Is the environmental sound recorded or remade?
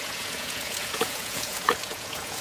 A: remade